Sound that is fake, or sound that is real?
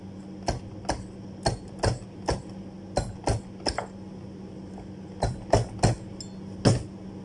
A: real